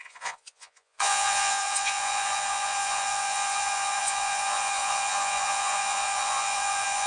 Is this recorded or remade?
remade